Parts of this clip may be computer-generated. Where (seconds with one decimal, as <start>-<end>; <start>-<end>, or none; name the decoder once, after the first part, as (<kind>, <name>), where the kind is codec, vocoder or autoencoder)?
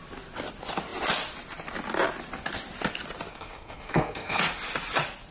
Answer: 3.3-4.4 (codec, SNAC)